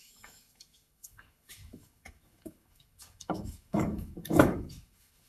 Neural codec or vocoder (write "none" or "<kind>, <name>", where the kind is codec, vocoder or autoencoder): autoencoder, DAC-VAE